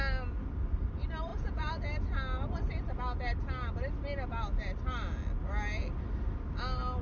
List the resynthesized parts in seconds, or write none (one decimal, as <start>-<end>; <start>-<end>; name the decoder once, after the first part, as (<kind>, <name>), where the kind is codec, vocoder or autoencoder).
1.3-1.8 (vocoder, Vocos)